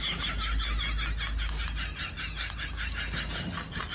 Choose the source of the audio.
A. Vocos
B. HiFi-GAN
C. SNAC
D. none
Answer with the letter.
D